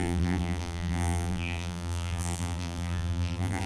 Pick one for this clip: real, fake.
fake